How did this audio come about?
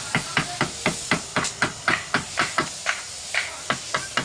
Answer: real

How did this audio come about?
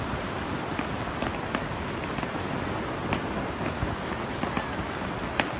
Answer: real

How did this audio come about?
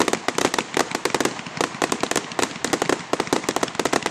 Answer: real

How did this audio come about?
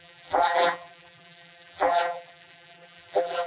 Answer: fake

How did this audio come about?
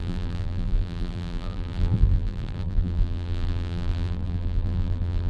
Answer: fake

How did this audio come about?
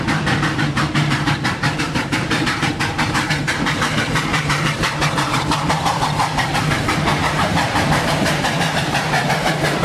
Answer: fake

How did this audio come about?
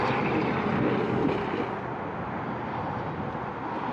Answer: real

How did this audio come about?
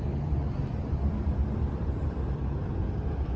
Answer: fake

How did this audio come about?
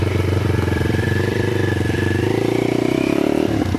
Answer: fake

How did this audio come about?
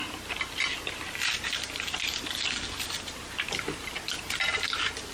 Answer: real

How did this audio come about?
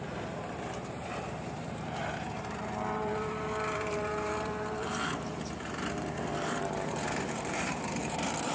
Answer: fake